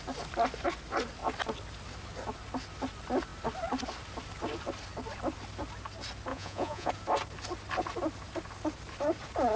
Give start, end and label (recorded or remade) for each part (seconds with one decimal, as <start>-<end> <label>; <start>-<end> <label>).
0.0-6.3 recorded; 6.3-6.9 remade; 6.9-9.6 recorded